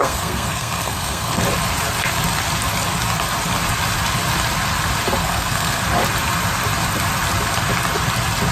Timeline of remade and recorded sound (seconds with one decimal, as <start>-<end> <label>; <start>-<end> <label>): 0.0-1.4 remade; 1.4-5.2 recorded; 5.2-5.8 remade; 5.8-8.5 recorded